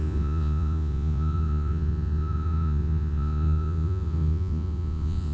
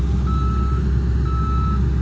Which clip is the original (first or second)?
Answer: second